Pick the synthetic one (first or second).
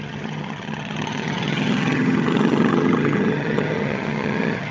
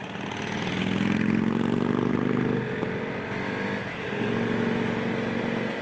first